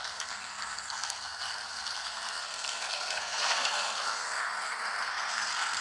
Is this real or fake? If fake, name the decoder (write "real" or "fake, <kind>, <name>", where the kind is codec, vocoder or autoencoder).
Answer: fake, codec, SNAC